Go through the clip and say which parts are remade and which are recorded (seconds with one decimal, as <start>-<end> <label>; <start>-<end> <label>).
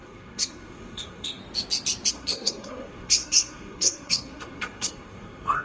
0.0-1.4 remade; 1.4-2.1 recorded; 2.1-5.6 remade